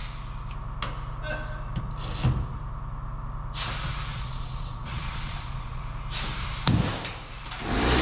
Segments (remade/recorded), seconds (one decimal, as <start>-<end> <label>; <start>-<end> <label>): 0.0-4.1 recorded; 4.1-5.8 remade; 5.8-8.0 recorded